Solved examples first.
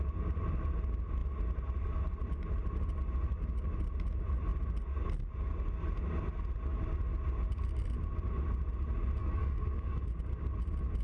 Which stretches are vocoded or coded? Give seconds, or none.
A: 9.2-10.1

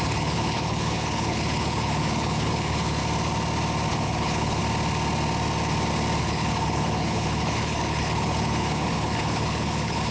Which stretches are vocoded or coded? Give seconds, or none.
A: 0.0-3.0; 3.9-4.6; 6.2-10.1

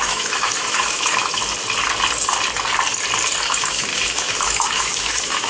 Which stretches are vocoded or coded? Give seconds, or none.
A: 0.0-1.4; 3.5-5.5